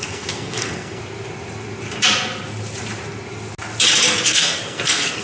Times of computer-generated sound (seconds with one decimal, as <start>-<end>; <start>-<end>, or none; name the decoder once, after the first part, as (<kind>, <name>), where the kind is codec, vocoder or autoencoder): 0.0-1.0 (codec, SNAC); 4.1-5.2